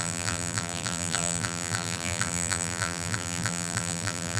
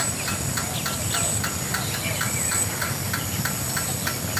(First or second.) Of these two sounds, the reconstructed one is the first